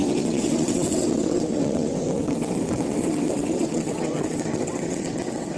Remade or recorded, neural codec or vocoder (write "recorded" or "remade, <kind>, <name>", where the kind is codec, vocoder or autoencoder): remade, vocoder, WaveNeXt